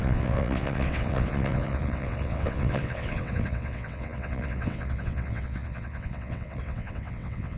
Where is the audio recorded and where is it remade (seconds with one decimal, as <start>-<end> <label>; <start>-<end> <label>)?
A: 0.0-7.6 remade